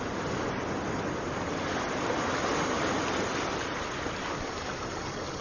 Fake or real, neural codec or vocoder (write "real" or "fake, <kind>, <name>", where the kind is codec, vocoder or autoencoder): real